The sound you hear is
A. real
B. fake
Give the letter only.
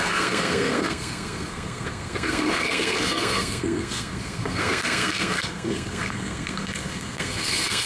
B